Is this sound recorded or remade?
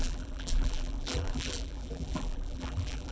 remade